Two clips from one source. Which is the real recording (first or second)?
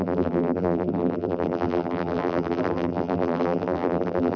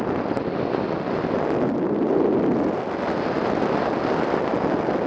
second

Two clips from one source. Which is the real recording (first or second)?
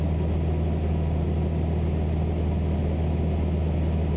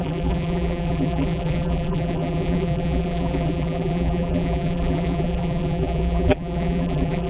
first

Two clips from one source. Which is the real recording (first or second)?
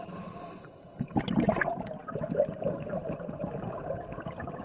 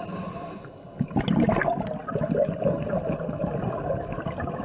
second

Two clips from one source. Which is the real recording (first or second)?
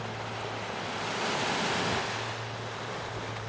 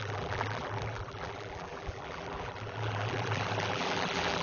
first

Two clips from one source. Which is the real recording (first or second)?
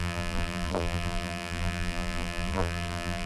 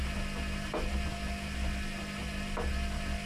second